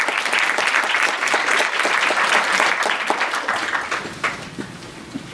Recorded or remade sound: recorded